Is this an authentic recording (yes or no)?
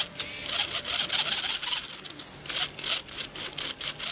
yes